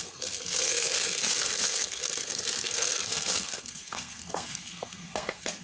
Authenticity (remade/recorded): remade